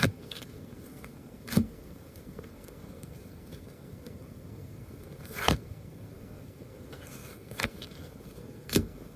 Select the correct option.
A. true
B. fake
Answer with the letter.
B